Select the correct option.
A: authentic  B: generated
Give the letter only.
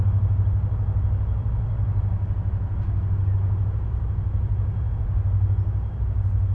A